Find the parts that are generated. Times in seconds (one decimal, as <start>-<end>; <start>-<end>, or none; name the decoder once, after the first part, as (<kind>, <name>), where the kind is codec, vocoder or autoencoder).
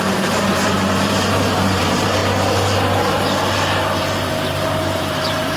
0.0-2.2 (vocoder, BigVGAN v2); 4.3-5.6